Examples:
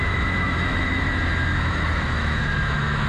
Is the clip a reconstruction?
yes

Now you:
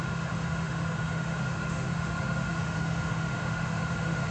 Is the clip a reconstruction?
yes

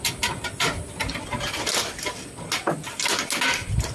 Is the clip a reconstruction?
no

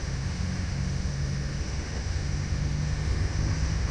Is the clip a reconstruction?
yes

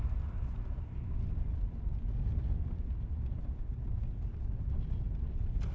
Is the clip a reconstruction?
no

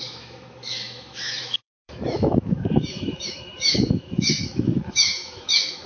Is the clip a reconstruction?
yes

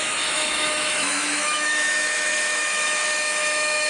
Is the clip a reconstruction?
yes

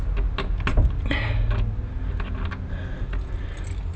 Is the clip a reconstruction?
no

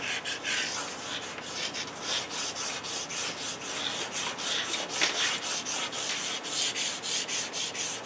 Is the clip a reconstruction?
no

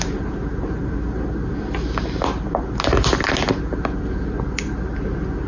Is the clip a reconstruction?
no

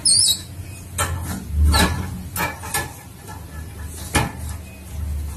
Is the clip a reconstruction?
no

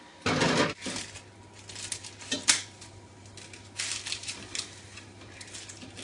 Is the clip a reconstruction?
no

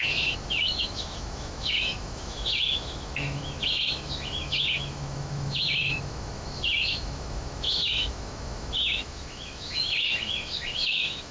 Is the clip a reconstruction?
yes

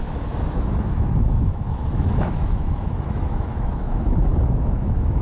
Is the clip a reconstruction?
yes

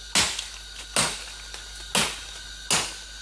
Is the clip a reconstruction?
no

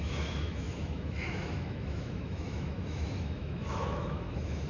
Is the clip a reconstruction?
yes